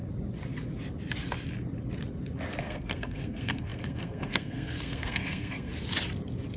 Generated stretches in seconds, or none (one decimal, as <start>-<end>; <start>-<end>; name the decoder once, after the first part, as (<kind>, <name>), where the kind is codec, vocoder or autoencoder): 2.6-5.7 (codec, SNAC)